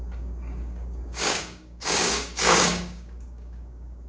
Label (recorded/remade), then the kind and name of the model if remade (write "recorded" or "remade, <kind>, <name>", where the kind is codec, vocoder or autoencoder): remade, codec, DAC